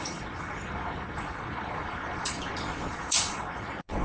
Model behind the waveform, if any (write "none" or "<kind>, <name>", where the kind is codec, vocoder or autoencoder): vocoder, Vocos